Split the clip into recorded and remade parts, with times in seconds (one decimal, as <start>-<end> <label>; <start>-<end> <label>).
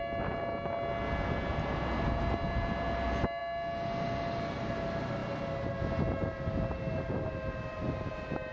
0.0-8.5 recorded